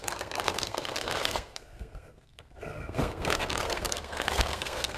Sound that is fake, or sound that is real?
fake